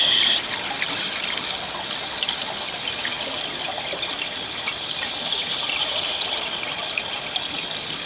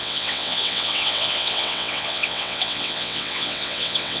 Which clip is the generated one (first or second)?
second